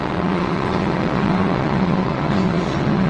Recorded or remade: remade